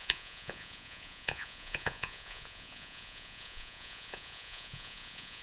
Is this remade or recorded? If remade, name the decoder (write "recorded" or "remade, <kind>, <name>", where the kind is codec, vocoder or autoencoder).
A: remade, vocoder, Vocos